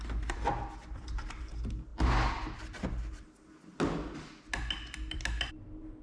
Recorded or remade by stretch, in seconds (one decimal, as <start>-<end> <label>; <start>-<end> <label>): 0.0-6.0 recorded